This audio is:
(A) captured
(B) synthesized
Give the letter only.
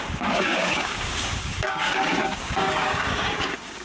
B